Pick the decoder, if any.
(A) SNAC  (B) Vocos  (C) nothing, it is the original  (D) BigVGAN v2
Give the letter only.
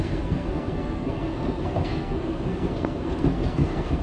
A